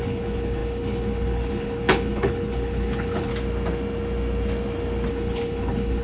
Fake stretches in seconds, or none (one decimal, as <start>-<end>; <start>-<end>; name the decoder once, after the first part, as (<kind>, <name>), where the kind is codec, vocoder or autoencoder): 0.0-3.3 (codec, HILCodec); 5.1-6.0